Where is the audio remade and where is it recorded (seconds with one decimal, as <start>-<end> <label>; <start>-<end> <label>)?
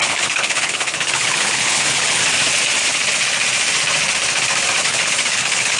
0.0-2.2 remade; 2.2-4.8 recorded; 4.8-5.8 remade